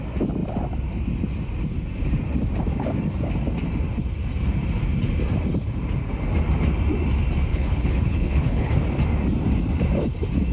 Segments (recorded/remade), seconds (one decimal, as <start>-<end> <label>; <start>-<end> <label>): 0.0-7.5 recorded; 7.5-8.7 remade; 8.7-10.5 recorded

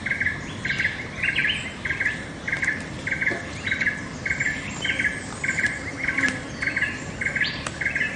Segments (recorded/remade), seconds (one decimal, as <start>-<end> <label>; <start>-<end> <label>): 0.0-8.2 recorded

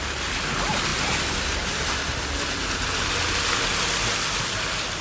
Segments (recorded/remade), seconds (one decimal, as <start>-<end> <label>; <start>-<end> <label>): 0.0-5.0 recorded

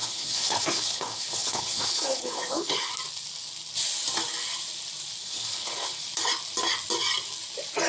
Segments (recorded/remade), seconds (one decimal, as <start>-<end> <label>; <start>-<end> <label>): 0.0-2.9 remade; 2.9-5.2 recorded; 5.2-6.0 remade; 6.0-7.9 recorded

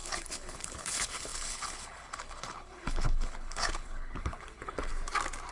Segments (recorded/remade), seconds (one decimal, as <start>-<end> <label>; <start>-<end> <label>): 0.0-4.9 remade; 4.9-5.5 recorded

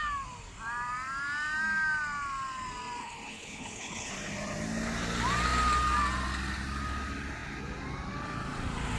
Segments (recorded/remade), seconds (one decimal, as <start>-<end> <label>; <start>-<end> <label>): 0.0-3.0 recorded; 3.0-4.1 remade; 4.1-9.0 recorded

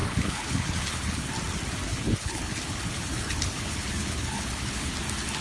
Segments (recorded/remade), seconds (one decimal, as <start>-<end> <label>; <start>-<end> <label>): 0.0-1.3 remade; 1.3-1.9 recorded; 1.9-4.9 remade; 4.9-5.4 recorded